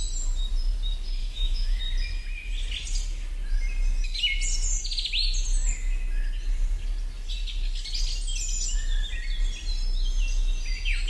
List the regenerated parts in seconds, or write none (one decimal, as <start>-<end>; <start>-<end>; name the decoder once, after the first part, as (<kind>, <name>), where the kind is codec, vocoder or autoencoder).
1.2-1.8 (autoencoder, DAC-VAE)

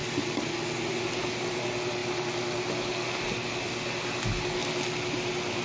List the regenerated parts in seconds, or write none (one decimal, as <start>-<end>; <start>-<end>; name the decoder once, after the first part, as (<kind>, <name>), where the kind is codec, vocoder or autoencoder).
none

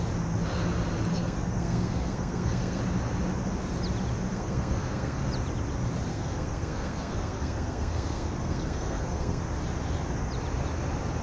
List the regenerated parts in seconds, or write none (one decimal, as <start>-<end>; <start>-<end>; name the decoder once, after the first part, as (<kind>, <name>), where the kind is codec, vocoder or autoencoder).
1.1-2.8 (codec, SNAC); 4.3-5.2; 6.1-9.4

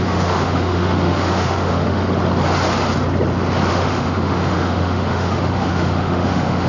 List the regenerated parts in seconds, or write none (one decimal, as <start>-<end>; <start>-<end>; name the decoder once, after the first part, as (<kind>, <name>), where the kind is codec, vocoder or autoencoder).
0.0-2.0 (autoencoder, DAC-VAE); 3.7-6.7

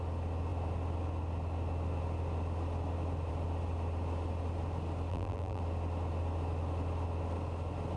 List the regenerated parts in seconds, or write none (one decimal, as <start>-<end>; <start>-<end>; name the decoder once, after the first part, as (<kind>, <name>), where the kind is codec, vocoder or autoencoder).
5.1-5.6 (vocoder, BigVGAN v2)